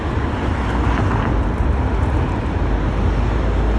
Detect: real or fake real